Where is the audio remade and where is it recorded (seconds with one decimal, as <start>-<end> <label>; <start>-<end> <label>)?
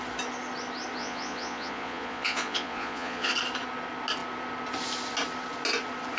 0.0-1.0 recorded; 1.0-3.3 remade; 3.3-6.2 recorded